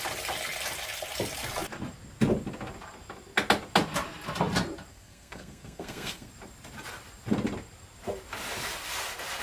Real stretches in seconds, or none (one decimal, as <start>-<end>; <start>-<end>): 0.0-4.9; 6.3-9.4

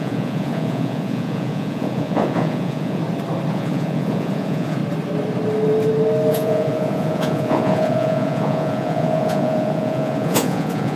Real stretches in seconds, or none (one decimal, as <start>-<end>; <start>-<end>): 3.0-3.5; 4.8-6.3

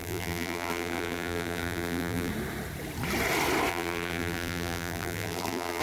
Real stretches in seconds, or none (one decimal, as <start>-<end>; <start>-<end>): 2.3-3.7